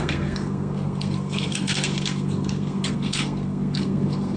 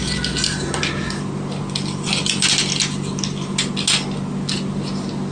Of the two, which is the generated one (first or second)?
first